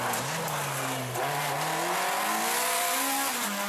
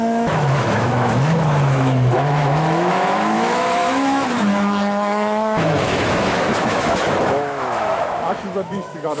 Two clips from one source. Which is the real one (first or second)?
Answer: first